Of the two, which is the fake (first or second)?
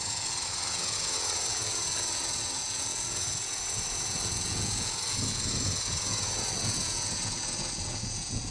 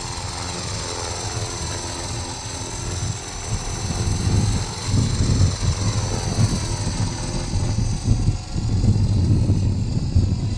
first